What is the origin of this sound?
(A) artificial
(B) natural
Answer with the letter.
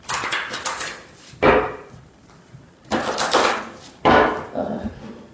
B